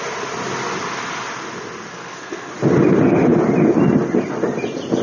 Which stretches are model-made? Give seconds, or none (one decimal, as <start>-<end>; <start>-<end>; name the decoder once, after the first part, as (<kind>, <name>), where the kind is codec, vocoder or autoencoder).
1.9-2.5 (codec, SNAC)